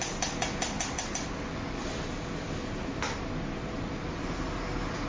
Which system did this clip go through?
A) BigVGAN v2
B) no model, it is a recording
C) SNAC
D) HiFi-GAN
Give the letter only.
B